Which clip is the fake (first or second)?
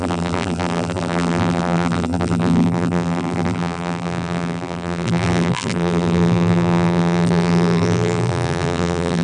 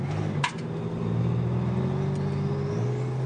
first